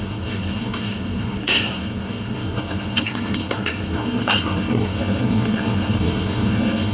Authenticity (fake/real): fake